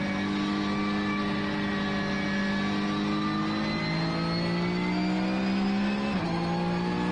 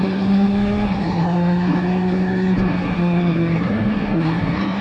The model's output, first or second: second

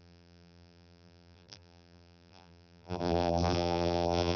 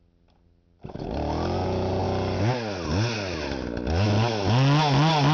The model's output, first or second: first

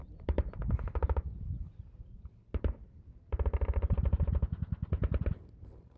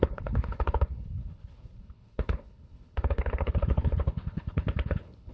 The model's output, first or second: second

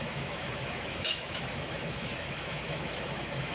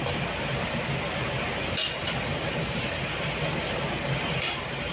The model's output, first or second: first